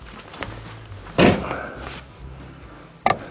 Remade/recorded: recorded